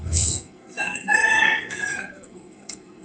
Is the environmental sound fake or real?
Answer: fake